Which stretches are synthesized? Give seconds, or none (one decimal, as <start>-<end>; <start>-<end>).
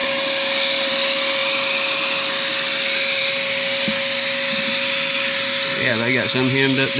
none